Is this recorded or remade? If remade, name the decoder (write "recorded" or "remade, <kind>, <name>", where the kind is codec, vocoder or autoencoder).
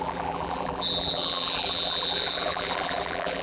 remade, vocoder, BigVGAN v2